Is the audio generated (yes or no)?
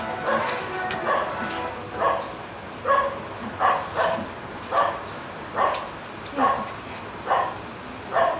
no